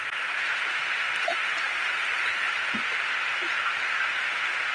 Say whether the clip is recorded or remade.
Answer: recorded